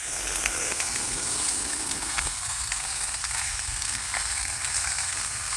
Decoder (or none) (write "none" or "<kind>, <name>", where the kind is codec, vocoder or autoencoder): codec, SNAC